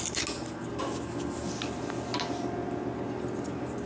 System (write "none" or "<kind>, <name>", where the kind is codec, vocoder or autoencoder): none